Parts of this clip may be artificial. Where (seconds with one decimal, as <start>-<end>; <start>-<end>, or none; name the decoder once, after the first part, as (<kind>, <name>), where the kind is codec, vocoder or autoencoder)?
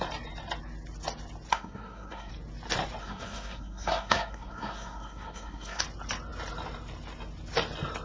1.5-2.3 (codec, SNAC); 3.0-5.8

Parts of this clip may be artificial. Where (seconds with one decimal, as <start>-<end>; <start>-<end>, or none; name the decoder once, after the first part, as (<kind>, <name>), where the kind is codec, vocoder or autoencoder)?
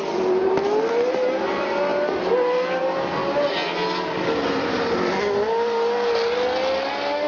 none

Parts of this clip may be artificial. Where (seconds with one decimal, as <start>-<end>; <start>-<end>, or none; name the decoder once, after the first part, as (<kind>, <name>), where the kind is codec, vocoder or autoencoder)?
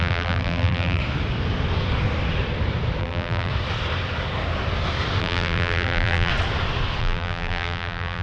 0.0-1.0 (vocoder, BigVGAN v2); 3.0-3.5; 5.2-6.3; 7.0-8.2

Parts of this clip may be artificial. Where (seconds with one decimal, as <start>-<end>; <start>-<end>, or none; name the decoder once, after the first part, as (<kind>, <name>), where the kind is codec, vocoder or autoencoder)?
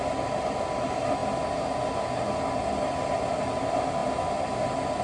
none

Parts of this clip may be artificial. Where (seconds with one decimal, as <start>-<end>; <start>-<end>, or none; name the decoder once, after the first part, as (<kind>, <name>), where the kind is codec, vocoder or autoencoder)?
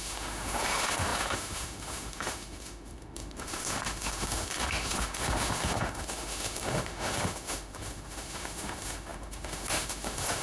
0.0-10.4 (autoencoder, DAC-VAE)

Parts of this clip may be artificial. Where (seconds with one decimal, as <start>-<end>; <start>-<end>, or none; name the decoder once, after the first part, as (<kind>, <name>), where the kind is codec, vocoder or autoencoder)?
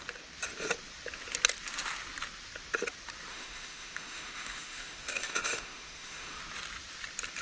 3.3-6.4 (autoencoder, DAC-VAE)